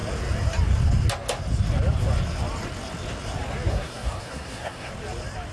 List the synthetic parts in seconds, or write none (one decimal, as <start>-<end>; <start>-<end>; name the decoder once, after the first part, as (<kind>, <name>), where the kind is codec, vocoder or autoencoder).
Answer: 3.7-4.9 (codec, SNAC)

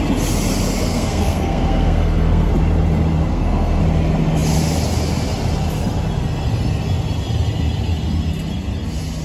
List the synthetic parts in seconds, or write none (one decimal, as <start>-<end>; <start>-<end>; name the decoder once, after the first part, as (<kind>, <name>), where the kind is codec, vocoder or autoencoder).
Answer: 0.9-2.5 (codec, SNAC); 3.3-3.8